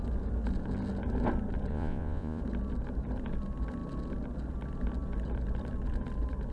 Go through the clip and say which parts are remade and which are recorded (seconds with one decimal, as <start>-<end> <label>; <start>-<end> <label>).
0.0-1.7 recorded; 1.7-2.4 remade; 2.4-6.5 recorded